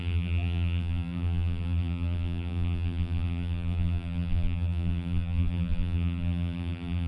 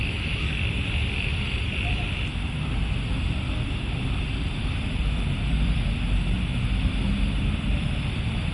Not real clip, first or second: first